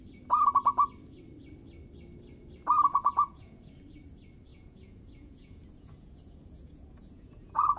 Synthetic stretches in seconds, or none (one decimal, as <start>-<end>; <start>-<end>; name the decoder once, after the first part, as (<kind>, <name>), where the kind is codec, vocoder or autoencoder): 2.9-3.7 (vocoder, Vocos); 4.5-7.8